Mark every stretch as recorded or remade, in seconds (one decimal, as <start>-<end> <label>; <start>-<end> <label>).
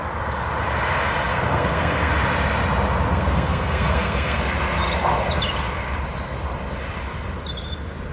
0.0-1.3 recorded; 1.3-2.1 remade; 2.1-3.1 recorded; 3.1-4.4 remade; 4.4-8.1 recorded